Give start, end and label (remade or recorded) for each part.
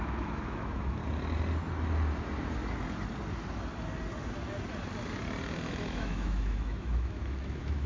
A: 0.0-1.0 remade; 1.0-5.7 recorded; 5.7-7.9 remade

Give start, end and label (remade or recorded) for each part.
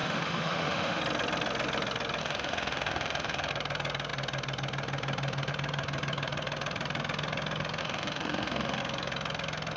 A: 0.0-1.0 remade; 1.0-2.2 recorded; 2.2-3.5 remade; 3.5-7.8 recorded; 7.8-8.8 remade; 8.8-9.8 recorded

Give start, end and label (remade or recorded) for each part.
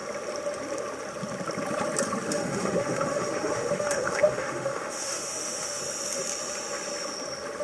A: 0.0-2.3 recorded; 2.3-5.8 remade; 5.8-7.6 recorded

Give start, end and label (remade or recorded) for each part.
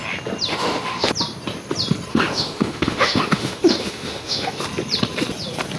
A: 0.0-0.5 recorded; 0.5-1.1 remade; 1.1-2.1 recorded; 2.1-4.6 remade; 4.6-5.8 recorded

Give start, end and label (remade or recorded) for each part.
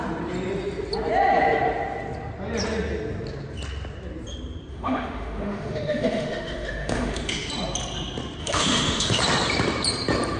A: 0.0-4.7 recorded; 4.7-7.5 remade; 7.5-8.4 recorded; 8.4-9.2 remade; 9.2-10.4 recorded